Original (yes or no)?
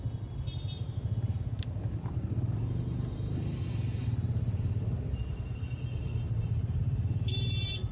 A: yes